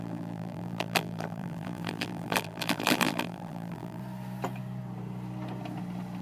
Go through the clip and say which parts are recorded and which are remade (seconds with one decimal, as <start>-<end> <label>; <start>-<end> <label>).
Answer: 0.0-4.0 remade; 4.0-6.2 recorded